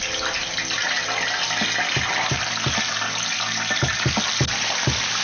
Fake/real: real